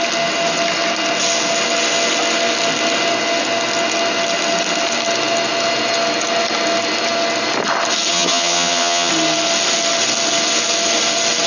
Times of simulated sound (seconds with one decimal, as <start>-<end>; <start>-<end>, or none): 8.1-9.1